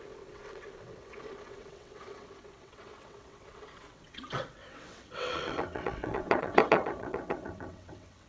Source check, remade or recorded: remade